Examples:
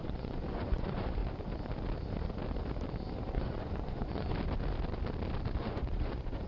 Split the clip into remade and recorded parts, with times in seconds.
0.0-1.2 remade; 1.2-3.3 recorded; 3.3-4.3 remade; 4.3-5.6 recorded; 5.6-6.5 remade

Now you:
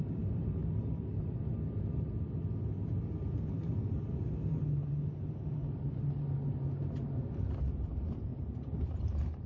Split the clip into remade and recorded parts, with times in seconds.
0.0-9.5 recorded